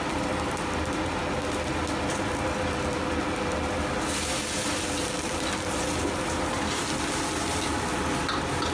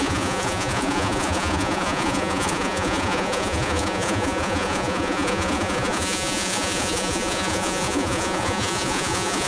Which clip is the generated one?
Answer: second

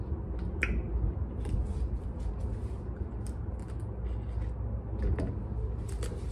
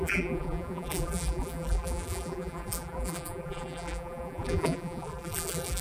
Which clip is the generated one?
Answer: second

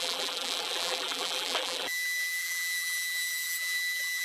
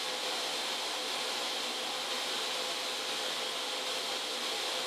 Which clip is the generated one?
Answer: first